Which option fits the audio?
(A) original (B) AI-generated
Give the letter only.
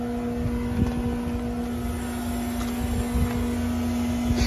A